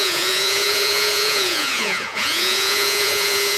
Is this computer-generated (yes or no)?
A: yes